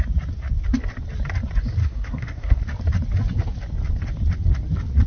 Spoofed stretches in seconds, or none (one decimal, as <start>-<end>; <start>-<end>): 1.8-2.6